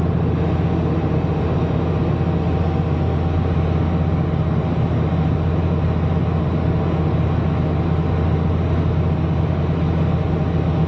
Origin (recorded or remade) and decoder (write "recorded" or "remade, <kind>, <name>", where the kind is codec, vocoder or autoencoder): recorded